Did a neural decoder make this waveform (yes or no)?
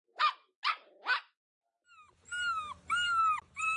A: no